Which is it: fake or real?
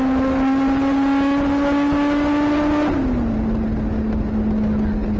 real